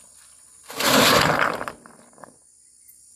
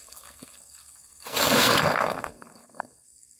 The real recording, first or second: first